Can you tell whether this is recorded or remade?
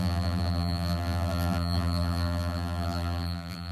remade